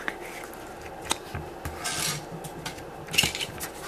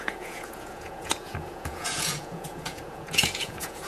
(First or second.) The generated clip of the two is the second